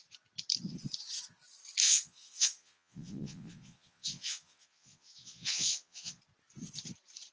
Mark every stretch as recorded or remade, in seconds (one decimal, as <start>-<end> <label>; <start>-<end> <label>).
0.0-1.8 recorded; 1.8-6.2 remade; 6.2-7.3 recorded